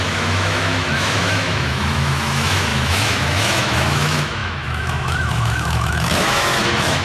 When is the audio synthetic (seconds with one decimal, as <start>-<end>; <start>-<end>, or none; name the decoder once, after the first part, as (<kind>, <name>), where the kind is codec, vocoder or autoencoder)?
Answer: 0.0-7.0 (autoencoder, DAC-VAE)